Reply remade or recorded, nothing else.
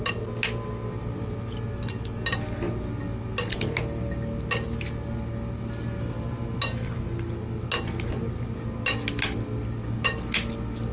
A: recorded